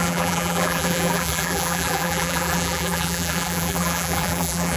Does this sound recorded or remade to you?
remade